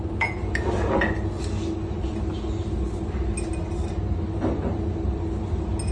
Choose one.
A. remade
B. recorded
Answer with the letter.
B